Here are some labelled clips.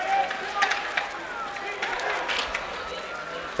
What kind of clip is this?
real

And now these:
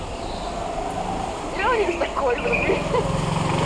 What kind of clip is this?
real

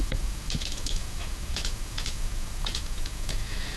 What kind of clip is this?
fake